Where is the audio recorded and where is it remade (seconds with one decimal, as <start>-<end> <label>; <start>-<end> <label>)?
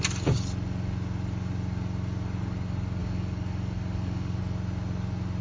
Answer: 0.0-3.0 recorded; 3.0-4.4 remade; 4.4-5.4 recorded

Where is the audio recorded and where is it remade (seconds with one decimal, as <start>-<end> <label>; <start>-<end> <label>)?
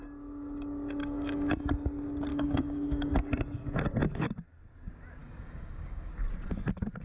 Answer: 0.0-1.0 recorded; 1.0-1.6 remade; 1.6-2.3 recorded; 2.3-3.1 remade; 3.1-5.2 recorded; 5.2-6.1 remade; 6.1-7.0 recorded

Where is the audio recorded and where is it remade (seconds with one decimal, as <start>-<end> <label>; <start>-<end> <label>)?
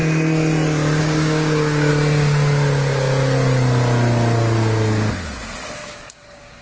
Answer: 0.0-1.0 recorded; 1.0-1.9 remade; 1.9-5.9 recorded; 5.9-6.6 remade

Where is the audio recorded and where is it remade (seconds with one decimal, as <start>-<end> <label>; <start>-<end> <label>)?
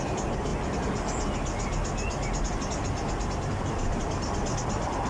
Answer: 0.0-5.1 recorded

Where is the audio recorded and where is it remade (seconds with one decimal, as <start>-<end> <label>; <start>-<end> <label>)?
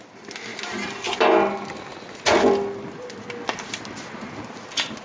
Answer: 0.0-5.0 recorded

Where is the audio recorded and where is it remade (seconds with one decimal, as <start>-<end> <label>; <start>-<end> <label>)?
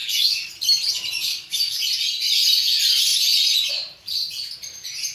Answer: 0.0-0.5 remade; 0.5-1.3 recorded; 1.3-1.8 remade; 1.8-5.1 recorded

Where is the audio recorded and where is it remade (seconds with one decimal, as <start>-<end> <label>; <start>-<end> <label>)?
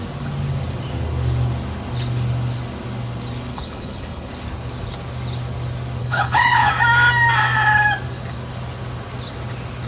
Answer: 0.0-3.5 recorded; 3.5-4.3 remade; 4.3-6.0 recorded; 6.0-6.7 remade; 6.7-9.9 recorded